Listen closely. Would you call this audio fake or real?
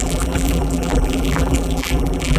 fake